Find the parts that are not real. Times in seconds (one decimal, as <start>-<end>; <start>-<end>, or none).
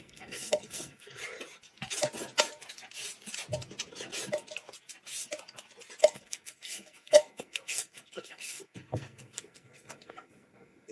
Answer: 0.0-1.2; 6.0-10.9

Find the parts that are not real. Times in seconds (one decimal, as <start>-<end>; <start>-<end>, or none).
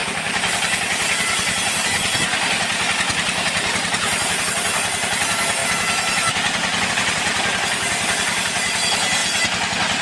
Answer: 0.0-5.6; 6.9-9.2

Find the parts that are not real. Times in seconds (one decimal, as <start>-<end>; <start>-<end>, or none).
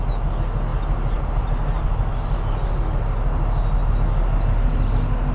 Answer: none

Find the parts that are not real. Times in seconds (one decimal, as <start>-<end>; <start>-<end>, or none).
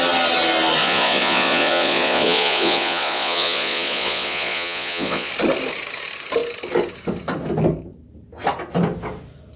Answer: 0.8-5.3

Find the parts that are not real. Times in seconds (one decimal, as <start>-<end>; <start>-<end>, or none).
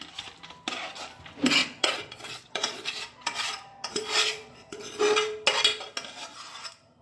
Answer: 1.6-5.0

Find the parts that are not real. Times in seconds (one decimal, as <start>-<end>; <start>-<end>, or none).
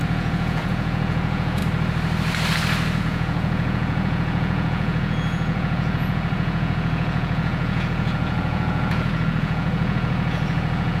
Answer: 0.0-1.6; 3.0-11.0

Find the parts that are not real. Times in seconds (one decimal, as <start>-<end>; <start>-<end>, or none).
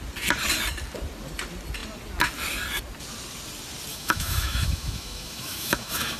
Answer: 3.9-6.2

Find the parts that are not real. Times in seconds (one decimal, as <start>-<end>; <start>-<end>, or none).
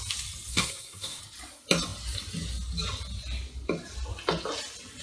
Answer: 0.5-1.2